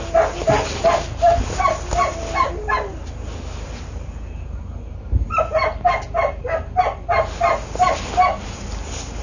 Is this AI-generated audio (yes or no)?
no